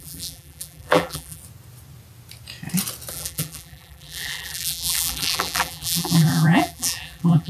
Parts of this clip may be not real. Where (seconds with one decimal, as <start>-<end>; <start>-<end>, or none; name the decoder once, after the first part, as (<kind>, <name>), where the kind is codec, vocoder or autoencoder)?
0.0-1.4 (vocoder, BigVGAN v2); 3.1-7.5